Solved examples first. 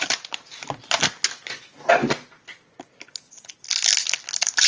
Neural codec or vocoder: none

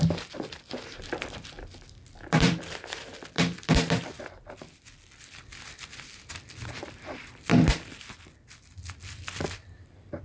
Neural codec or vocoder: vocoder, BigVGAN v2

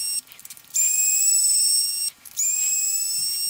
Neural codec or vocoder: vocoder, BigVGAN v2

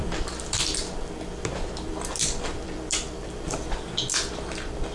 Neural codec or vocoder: vocoder, BigVGAN v2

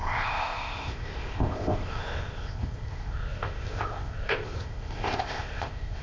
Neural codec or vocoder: codec, ZipCodec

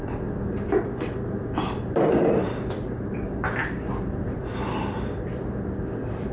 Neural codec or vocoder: vocoder, BigVGAN v2